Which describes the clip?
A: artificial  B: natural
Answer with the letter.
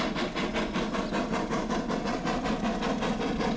B